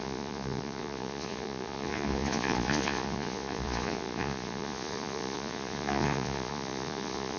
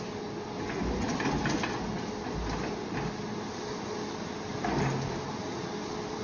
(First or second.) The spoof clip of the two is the first